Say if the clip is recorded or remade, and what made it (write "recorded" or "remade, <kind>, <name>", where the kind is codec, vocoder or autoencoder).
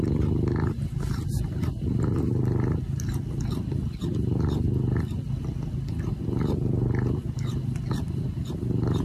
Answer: recorded